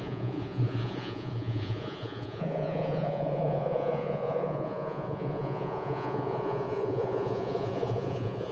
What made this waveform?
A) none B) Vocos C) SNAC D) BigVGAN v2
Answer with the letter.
B